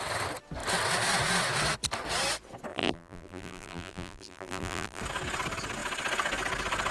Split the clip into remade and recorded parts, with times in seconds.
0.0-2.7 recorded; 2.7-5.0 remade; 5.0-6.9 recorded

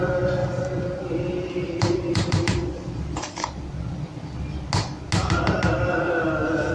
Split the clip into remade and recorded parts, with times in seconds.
0.0-0.4 recorded; 0.4-3.6 remade; 3.6-6.7 recorded

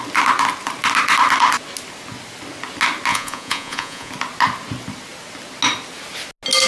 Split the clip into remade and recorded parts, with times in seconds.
0.0-3.1 recorded; 3.1-4.1 remade; 4.1-6.7 recorded